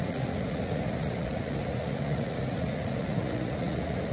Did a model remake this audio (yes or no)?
yes